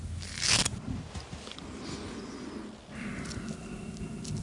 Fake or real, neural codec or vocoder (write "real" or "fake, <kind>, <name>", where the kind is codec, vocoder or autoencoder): real